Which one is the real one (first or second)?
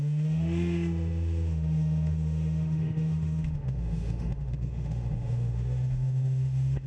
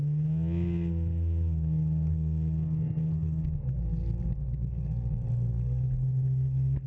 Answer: second